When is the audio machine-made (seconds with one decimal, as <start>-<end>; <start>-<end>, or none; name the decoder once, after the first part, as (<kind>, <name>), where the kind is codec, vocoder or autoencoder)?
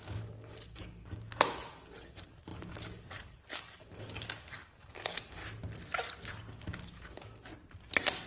0.0-5.4 (codec, DAC); 6.5-7.5